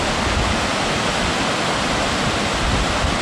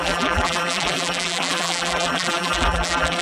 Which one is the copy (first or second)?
second